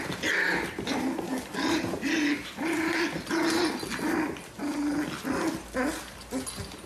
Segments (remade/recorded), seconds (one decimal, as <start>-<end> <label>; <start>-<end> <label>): 0.0-6.9 recorded